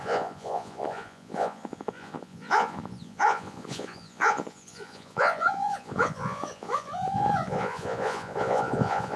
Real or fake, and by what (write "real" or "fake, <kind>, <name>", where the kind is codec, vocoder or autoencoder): fake, vocoder, Vocos